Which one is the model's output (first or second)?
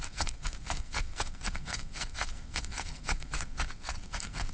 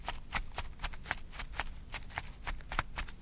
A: first